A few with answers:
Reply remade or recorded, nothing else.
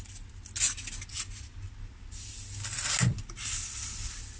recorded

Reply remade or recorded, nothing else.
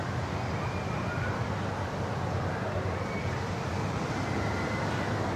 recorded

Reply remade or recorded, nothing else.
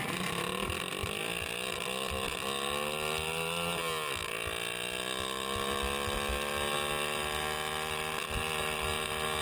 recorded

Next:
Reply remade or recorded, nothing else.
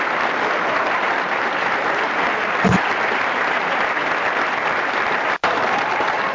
recorded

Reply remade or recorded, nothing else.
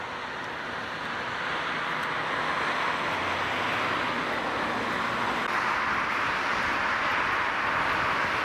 recorded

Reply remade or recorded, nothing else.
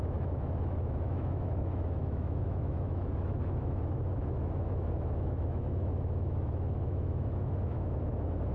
remade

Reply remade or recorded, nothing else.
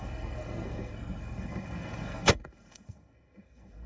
remade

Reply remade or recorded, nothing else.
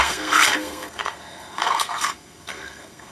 remade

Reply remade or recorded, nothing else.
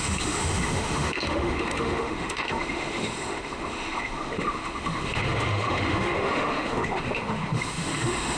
remade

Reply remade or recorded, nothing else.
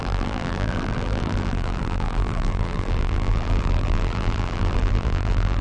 remade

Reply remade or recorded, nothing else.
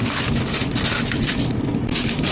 recorded